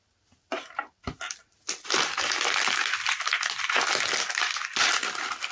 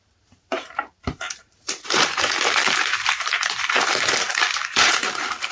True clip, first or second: first